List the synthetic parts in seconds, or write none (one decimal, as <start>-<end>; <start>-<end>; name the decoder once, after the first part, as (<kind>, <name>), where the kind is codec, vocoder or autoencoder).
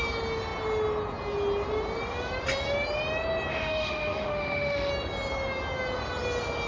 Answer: 3.5-4.9 (autoencoder, DAC-VAE)